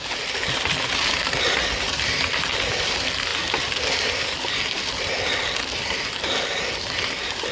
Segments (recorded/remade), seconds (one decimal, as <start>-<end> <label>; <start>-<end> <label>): 0.0-7.5 recorded